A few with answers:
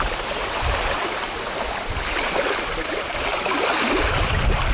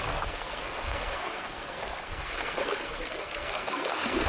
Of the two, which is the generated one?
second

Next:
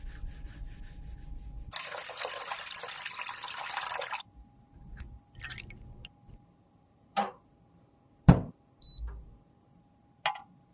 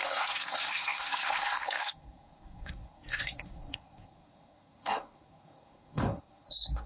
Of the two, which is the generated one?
second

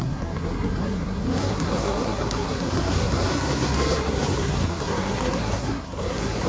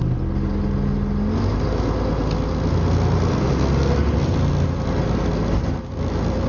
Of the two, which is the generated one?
first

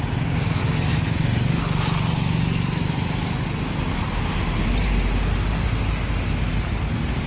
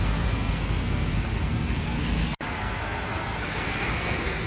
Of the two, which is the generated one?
second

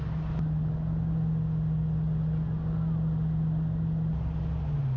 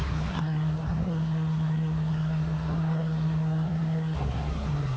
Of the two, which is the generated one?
second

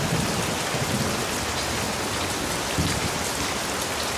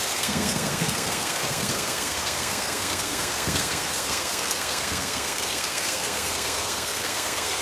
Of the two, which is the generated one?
second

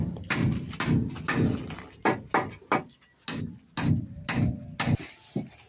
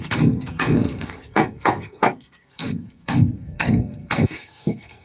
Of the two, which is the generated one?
second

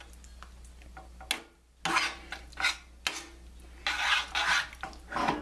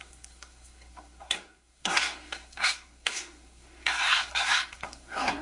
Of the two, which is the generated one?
second